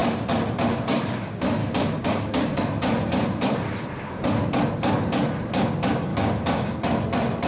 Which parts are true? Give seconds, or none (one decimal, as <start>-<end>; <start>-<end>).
0.0-1.6; 2.6-6.1; 6.8-7.5